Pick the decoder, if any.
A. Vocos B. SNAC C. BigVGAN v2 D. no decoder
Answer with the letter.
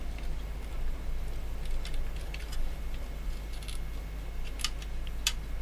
D